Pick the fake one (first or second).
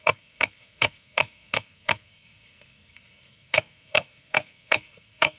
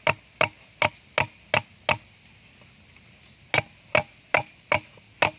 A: first